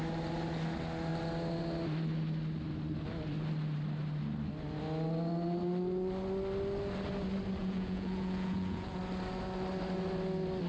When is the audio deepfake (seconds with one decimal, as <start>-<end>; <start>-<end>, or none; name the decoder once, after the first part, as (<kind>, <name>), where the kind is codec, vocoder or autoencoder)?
7.6-9.0 (vocoder, Vocos)